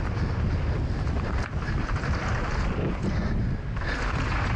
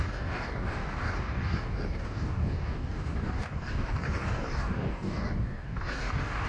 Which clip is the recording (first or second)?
first